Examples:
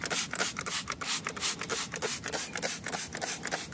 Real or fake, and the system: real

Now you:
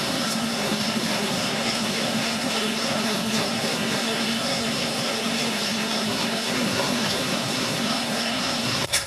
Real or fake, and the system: fake, codec, SNAC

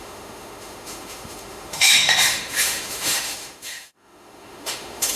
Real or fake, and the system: fake, autoencoder, DAC-VAE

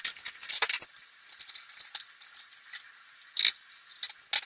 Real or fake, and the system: real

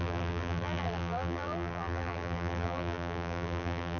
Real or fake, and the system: fake, vocoder, BigVGAN v2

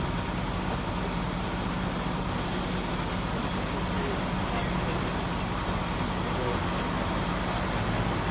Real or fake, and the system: real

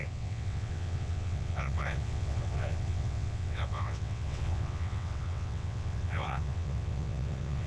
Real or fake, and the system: fake, vocoder, WaveNeXt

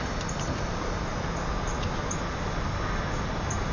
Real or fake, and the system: real